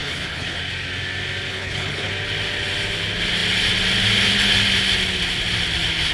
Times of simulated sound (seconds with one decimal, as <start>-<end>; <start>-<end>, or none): 0.0-0.6; 1.5-2.1